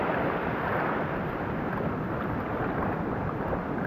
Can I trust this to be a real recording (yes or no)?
yes